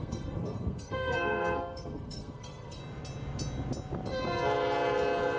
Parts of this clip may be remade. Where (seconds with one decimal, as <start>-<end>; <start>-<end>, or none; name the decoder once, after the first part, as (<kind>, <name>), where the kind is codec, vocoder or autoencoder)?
0.0-2.8 (codec, SNAC)